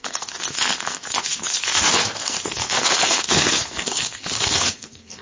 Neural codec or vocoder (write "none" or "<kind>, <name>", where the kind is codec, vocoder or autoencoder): codec, SNAC